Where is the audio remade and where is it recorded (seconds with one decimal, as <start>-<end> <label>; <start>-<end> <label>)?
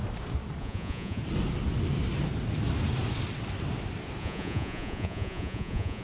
0.0-0.6 recorded; 0.6-1.2 remade; 1.2-4.2 recorded; 4.2-6.0 remade